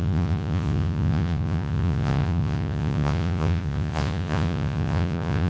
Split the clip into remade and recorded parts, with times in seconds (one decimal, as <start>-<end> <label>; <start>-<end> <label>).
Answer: 0.0-5.5 remade